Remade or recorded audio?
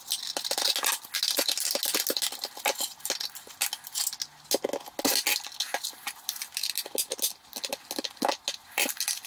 recorded